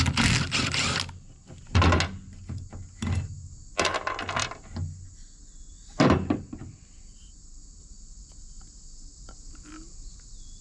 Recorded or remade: recorded